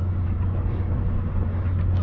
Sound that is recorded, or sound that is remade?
recorded